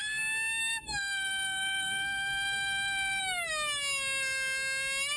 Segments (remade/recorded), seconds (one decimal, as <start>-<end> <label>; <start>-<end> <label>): 0.0-0.6 recorded; 0.6-3.2 remade; 3.2-5.2 recorded